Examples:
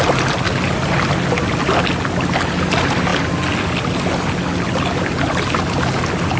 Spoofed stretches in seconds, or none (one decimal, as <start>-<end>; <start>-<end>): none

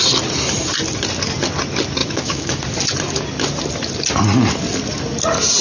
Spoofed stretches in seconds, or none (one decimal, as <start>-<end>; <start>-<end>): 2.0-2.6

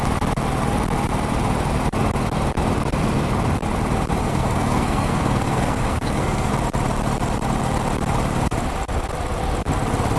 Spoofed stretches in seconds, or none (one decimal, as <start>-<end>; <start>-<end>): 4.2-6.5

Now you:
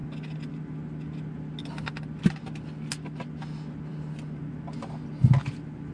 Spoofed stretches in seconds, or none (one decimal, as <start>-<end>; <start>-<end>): none